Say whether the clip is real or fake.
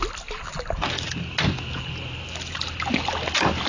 real